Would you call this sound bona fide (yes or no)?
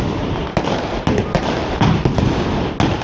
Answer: yes